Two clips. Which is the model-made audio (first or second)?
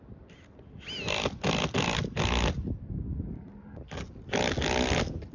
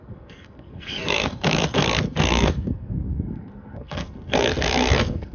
second